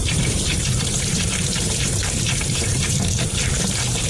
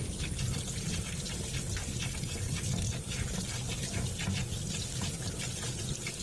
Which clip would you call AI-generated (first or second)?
first